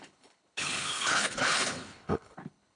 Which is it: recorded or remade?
remade